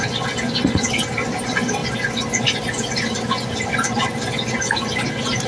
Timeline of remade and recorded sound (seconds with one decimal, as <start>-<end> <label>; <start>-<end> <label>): 0.0-1.8 recorded; 1.8-3.5 remade; 3.5-5.5 recorded